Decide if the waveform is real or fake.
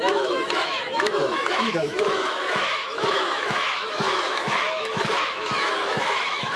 fake